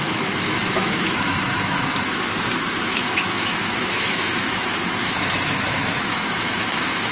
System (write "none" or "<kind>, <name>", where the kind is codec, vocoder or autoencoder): autoencoder, DAC-VAE